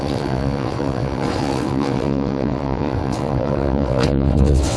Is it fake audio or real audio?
fake